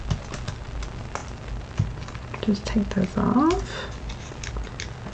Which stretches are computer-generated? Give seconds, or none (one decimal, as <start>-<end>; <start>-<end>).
none